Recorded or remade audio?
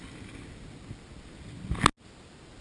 recorded